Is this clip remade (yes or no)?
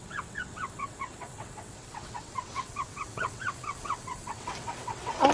yes